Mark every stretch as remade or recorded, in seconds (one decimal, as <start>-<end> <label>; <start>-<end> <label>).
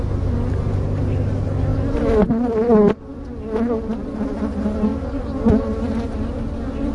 0.0-6.9 recorded